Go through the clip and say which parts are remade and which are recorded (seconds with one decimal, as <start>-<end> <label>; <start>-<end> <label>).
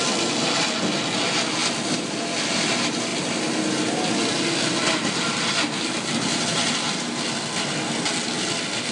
0.0-8.9 recorded